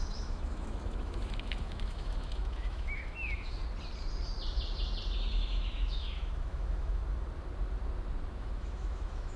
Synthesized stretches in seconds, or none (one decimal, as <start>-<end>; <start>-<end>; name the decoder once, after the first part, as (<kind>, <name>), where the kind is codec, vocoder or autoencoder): 0.0-3.6 (autoencoder, DAC-VAE); 5.3-7.0; 8.4-9.4

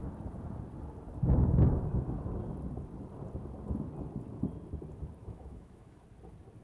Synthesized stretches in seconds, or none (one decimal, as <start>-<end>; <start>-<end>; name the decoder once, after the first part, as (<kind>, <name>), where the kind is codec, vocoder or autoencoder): 5.2-6.0 (autoencoder, DAC-VAE)